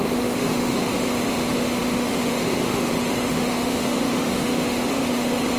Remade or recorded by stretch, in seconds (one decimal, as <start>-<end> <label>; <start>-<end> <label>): 0.0-5.6 remade